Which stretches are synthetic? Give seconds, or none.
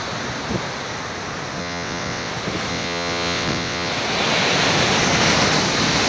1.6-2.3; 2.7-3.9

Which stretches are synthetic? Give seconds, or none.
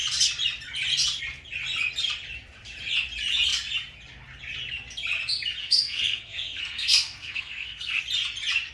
5.6-8.0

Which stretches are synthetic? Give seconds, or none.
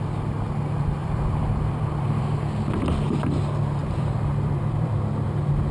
1.0-2.4; 3.8-4.9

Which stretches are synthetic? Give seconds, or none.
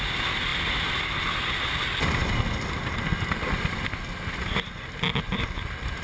none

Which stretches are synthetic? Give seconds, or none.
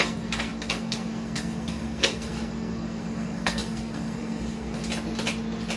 0.0-4.8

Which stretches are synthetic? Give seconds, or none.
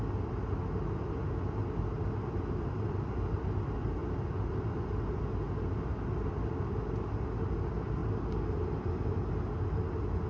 none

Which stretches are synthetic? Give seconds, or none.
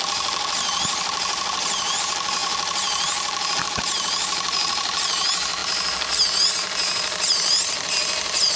0.0-8.6